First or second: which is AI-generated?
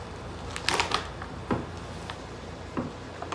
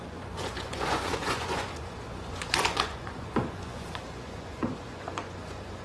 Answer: second